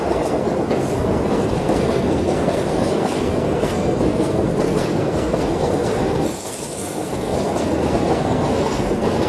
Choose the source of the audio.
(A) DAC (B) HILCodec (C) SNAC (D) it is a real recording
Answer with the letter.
C